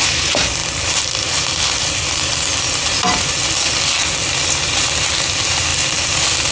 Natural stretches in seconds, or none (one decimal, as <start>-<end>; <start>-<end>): 0.0-6.5